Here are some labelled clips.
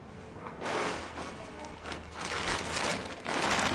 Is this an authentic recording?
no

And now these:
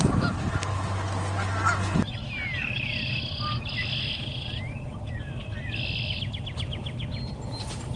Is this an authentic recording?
yes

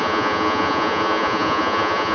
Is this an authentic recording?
no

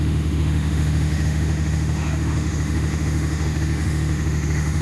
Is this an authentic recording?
no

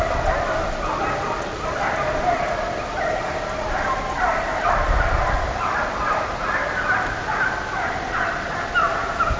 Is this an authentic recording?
yes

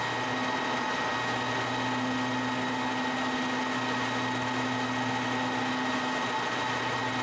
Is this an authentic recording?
yes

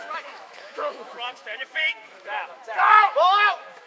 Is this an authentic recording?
no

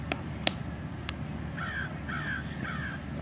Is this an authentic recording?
yes